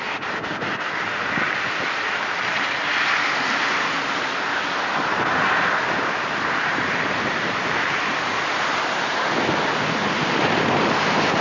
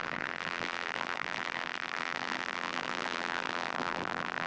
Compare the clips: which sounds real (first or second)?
first